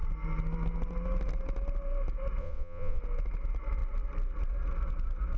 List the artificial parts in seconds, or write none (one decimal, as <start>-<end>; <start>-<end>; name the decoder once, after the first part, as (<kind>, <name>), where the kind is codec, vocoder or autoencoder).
2.4-3.0 (vocoder, Vocos)